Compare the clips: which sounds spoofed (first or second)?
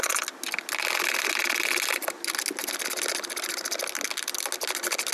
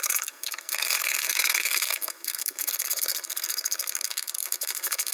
second